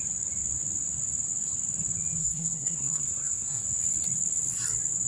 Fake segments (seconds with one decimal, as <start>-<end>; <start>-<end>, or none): 2.2-3.6